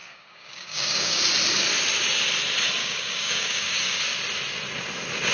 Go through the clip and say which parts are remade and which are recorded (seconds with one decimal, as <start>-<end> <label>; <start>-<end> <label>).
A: 0.0-1.2 remade; 1.2-2.8 recorded; 2.8-4.0 remade; 4.0-5.3 recorded